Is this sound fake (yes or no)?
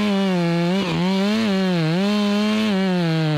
no